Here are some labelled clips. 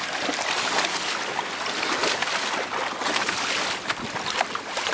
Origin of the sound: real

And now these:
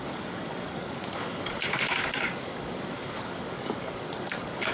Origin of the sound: fake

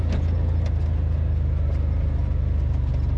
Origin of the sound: real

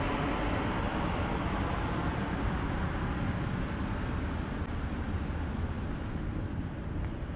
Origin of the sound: real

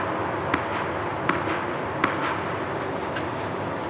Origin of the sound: real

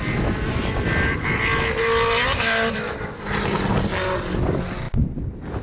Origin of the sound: real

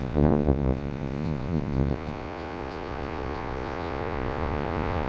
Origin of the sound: fake